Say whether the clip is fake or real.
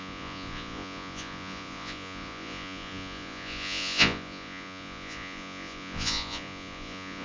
fake